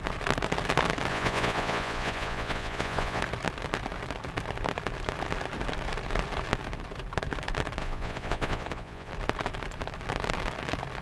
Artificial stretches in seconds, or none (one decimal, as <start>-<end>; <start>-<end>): 1.1-3.2; 7.8-9.1